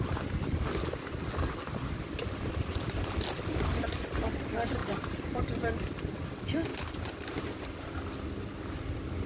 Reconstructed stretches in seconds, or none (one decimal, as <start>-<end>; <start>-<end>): 4.8-5.7; 6.7-7.6